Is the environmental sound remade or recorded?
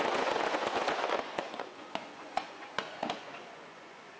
remade